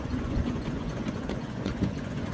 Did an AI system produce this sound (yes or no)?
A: yes